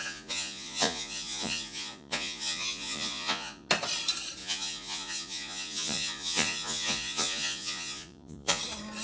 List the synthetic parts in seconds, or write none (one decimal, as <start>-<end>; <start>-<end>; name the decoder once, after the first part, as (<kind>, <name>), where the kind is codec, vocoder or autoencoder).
0.0-3.7 (vocoder, Vocos); 4.4-8.6